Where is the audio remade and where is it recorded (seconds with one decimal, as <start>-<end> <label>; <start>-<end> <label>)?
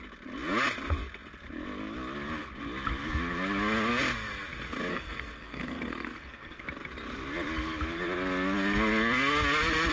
0.0-4.9 recorded; 4.9-6.6 remade; 6.6-9.9 recorded